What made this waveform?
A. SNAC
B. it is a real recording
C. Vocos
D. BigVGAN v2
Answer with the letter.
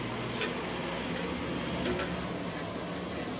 B